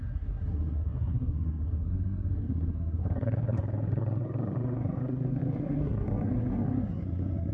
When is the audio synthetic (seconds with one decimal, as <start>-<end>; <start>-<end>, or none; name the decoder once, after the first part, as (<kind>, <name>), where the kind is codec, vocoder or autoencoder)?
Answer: 0.0-7.5 (codec, SNAC)